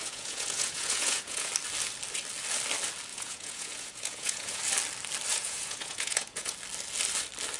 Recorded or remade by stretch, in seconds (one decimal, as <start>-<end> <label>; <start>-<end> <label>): 0.0-1.5 remade; 1.5-3.1 recorded; 3.1-4.6 remade; 4.6-5.3 recorded; 5.3-6.5 remade; 6.5-7.6 recorded